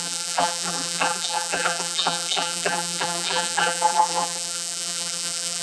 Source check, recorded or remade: remade